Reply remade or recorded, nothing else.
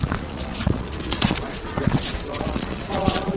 remade